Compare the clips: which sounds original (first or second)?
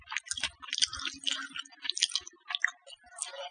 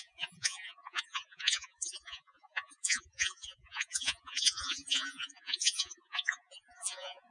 first